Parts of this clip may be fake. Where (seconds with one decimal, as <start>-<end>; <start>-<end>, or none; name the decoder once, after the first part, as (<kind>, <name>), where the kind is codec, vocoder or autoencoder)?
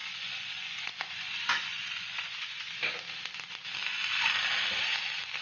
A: 0.0-2.8 (vocoder, Vocos)